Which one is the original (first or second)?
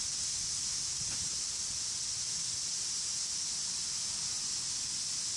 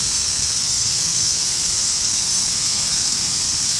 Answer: first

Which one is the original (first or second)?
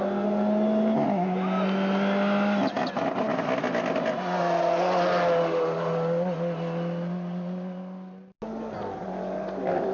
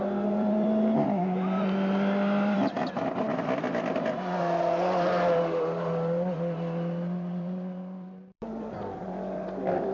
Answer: first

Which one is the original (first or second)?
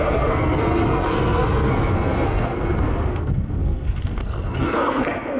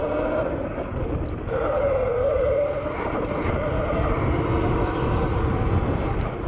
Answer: second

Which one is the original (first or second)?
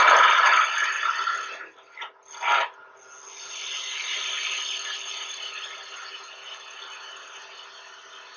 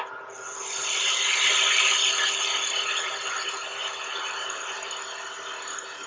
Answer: first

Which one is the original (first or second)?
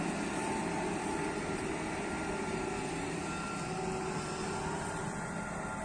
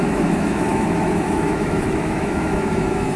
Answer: first